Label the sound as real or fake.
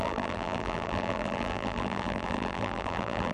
fake